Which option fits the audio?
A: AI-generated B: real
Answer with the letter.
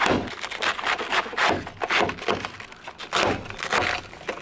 B